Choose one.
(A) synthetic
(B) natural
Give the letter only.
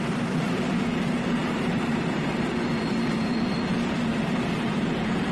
A